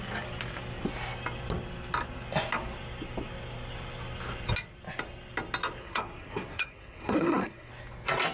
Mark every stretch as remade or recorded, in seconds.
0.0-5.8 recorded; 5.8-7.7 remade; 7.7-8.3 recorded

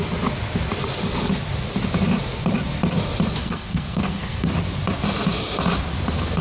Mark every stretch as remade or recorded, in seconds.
0.0-3.4 recorded; 3.4-4.5 remade; 4.5-6.4 recorded

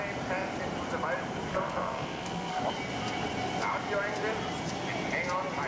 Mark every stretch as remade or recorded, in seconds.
0.0-1.5 recorded; 1.5-2.6 remade; 2.6-5.7 recorded

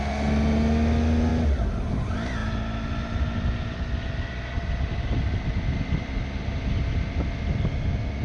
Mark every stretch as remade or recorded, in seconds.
0.0-8.2 recorded